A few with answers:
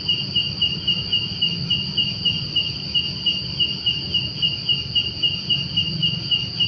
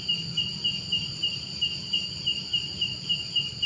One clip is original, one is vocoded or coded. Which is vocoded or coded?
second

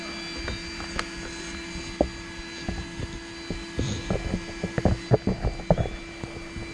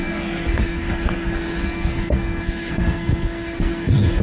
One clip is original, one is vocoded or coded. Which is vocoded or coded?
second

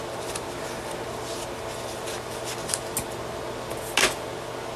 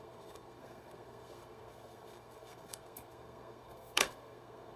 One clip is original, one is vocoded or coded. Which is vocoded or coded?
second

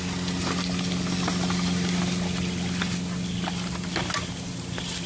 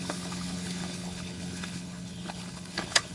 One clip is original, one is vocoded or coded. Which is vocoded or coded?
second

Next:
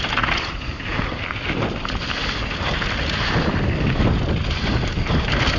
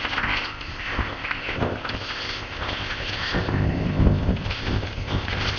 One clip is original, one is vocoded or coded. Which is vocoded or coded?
second